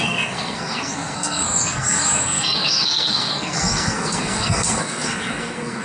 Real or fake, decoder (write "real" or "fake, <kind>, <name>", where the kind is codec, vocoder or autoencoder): fake, codec, SNAC